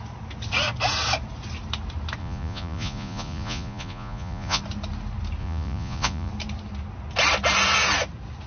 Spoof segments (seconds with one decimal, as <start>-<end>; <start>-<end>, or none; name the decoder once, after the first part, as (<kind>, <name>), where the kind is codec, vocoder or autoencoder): 2.2-4.6 (vocoder, Vocos); 5.4-6.3